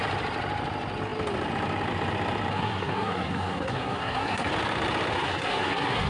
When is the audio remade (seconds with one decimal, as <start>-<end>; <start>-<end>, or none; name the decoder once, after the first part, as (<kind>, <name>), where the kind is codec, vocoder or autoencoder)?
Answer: 2.5-4.5 (codec, SNAC); 5.1-6.1